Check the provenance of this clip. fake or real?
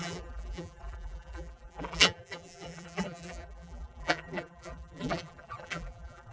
fake